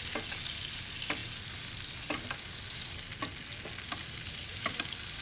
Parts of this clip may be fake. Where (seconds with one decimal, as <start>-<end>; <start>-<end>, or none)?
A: none